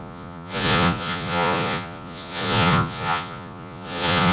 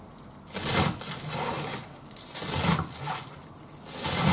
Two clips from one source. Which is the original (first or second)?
second